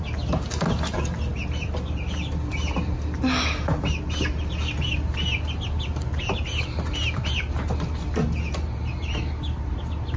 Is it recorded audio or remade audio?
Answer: recorded